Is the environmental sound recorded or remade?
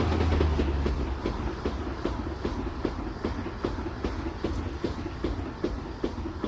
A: recorded